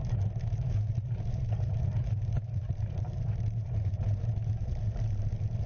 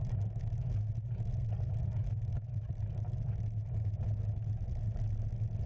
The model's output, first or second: first